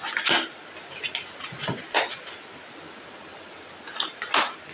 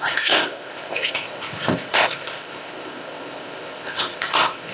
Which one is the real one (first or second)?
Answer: first